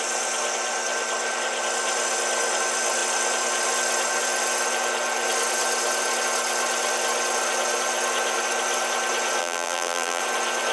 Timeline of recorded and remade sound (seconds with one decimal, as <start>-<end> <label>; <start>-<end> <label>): 0.0-9.4 recorded; 9.4-10.2 remade; 10.2-10.7 recorded